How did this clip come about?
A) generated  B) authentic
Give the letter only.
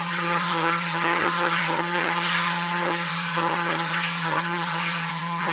A